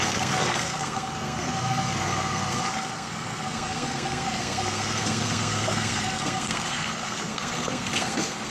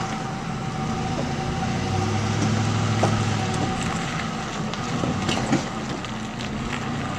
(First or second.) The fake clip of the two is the first